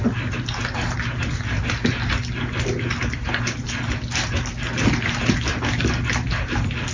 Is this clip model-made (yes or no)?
no